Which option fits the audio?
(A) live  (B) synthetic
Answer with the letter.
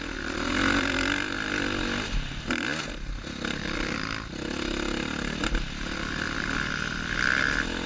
A